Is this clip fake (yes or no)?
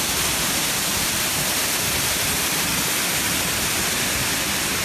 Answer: no